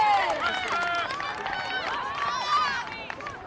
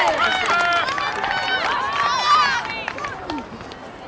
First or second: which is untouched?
second